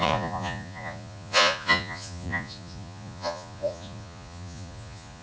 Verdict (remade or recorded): remade